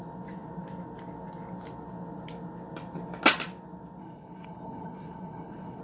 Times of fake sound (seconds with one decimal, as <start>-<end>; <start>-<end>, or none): 4.0-5.8